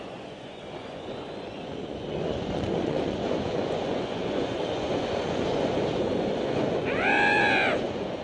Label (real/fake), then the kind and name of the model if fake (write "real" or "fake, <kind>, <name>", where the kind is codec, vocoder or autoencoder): fake, vocoder, Vocos